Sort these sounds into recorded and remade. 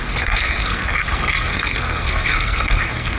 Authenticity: remade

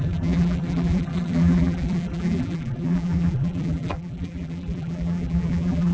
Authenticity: remade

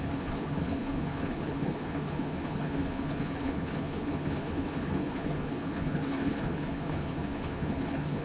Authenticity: remade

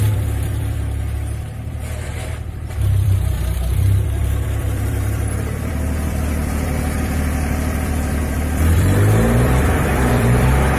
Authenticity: remade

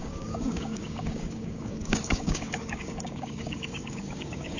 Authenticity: remade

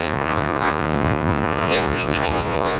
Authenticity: remade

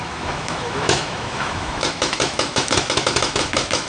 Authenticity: remade